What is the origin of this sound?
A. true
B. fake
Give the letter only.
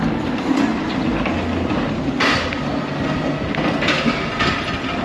A